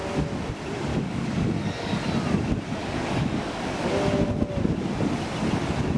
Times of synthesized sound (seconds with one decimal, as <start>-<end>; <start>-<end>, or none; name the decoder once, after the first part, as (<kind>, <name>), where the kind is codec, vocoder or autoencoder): 0.9-2.0 (codec, DAC); 2.8-3.9